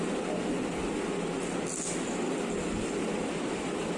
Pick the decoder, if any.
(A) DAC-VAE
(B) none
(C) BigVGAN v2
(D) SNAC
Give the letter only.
B